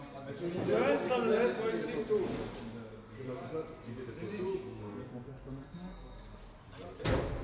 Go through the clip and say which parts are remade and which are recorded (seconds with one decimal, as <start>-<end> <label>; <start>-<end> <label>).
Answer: 0.0-4.5 recorded; 4.5-6.4 remade; 6.4-7.4 recorded